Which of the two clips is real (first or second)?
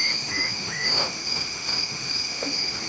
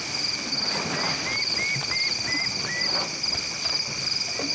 second